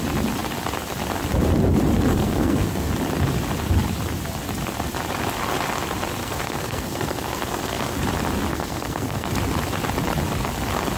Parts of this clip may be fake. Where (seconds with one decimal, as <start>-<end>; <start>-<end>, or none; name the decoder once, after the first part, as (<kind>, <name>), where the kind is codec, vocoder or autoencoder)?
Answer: 2.1-2.9 (codec, SNAC); 6.2-8.0; 8.5-9.3